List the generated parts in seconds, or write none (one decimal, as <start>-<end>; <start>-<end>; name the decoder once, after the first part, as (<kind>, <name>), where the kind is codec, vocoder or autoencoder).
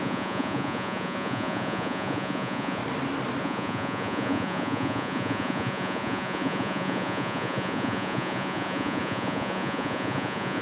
0.0-2.8 (vocoder, Vocos); 3.4-10.6